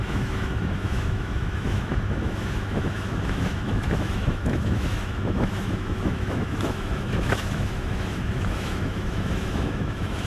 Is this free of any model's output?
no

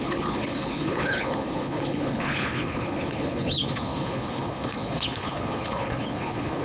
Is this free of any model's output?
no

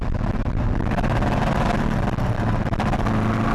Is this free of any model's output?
yes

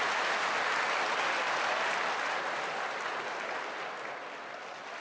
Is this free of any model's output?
yes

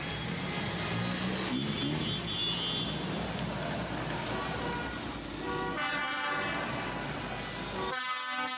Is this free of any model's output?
yes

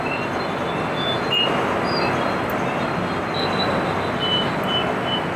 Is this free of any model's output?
yes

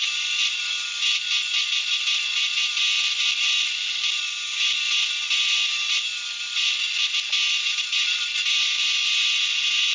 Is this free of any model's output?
yes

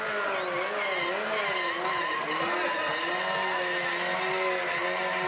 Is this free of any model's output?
yes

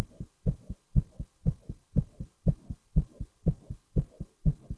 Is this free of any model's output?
yes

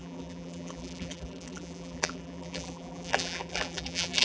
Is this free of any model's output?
no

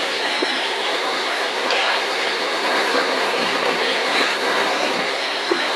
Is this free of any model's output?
no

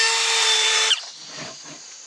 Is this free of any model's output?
no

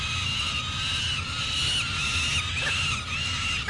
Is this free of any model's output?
yes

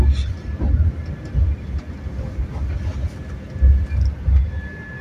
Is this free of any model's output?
yes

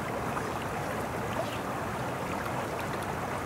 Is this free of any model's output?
yes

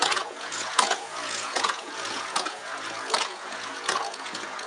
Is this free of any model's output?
no